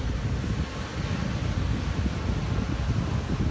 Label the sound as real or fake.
real